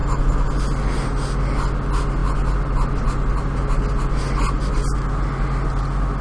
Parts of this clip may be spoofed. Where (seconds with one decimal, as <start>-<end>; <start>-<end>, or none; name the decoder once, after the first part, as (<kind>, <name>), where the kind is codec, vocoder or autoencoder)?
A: none